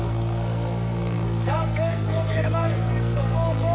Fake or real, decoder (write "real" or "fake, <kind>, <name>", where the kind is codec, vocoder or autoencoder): fake, codec, SNAC